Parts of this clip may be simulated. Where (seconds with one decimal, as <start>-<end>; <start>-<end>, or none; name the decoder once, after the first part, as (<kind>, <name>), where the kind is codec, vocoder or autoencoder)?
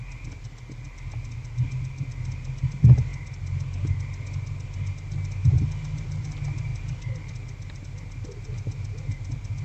none